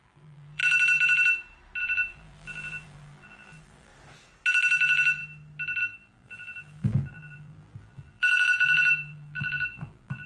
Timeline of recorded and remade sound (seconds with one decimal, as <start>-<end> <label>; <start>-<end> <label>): 0.0-0.6 remade; 0.6-1.8 recorded; 1.8-3.9 remade; 3.9-4.8 recorded; 4.8-5.2 remade; 5.2-5.8 recorded; 5.8-10.3 remade